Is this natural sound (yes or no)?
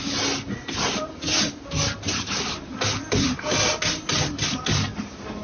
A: yes